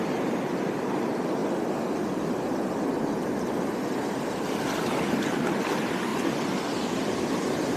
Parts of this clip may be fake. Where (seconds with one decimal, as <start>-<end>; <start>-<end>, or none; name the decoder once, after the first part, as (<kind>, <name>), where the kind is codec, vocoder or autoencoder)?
0.0-1.4 (vocoder, BigVGAN v2); 4.1-6.1; 6.9-7.8